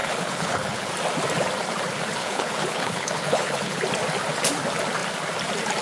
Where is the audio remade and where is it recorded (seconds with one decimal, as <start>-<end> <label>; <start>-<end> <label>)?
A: 0.0-0.9 remade; 0.9-2.2 recorded; 2.2-3.8 remade; 3.8-5.8 recorded